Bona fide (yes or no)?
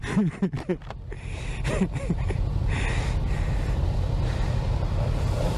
yes